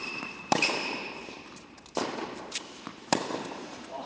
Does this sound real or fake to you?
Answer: fake